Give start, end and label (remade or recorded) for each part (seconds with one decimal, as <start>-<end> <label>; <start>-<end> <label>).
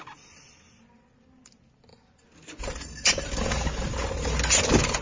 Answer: 0.0-5.0 recorded